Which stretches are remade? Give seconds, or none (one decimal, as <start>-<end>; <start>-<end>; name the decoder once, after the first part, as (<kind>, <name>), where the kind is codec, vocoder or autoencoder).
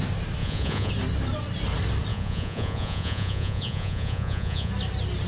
0.4-0.9 (vocoder, Vocos); 2.1-4.7